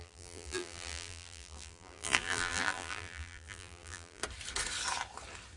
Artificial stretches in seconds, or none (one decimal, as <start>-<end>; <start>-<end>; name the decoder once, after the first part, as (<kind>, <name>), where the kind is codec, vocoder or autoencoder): 0.0-4.2 (vocoder, BigVGAN v2)